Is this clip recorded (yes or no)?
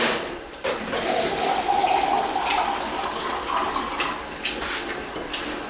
no